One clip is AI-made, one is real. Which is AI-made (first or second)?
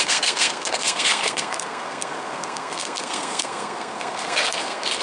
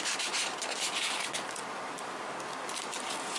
first